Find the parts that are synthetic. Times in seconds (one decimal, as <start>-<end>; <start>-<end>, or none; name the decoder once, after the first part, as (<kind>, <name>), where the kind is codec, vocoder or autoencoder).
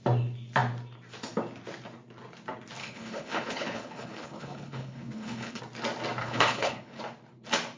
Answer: 2.8-5.6 (codec, HILCodec); 6.2-7.0